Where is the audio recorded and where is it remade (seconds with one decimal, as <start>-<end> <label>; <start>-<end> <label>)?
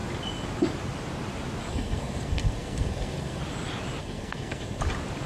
0.0-1.7 recorded; 1.7-3.4 remade; 3.4-4.0 recorded; 4.0-4.8 remade; 4.8-5.3 recorded